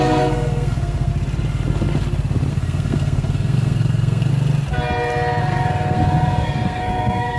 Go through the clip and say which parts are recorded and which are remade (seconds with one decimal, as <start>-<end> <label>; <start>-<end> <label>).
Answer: 0.0-1.1 remade; 1.1-2.5 recorded; 2.5-4.3 remade; 4.3-5.4 recorded; 5.4-7.4 remade